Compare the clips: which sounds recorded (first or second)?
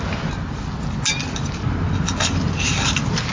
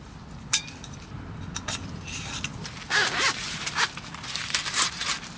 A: first